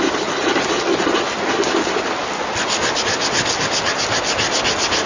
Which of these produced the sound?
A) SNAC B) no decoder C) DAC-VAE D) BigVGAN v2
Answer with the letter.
B